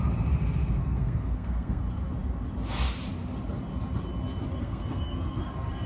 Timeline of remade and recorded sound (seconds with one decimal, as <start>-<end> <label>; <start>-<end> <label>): 0.0-0.8 recorded; 0.8-1.8 remade; 1.8-4.6 recorded; 4.6-5.4 remade; 5.4-5.9 recorded